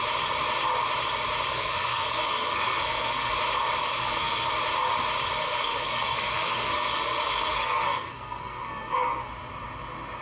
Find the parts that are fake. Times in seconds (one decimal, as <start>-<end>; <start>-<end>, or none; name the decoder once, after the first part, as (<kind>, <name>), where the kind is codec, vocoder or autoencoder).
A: 1.5-3.3 (codec, SNAC); 3.8-4.5; 5.4-9.3